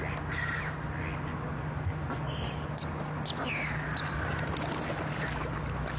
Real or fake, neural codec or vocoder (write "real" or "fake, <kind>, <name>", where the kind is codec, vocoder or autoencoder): real